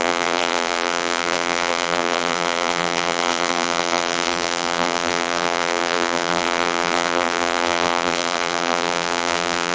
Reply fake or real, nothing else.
fake